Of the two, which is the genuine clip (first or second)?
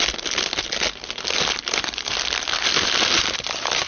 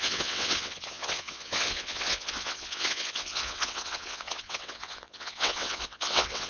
first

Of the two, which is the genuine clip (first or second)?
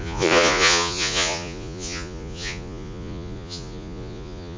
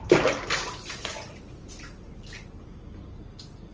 second